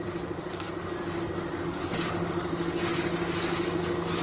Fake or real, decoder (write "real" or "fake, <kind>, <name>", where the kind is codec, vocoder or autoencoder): fake, codec, DAC